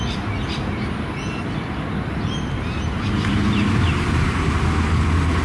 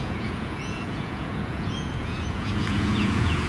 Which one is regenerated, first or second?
second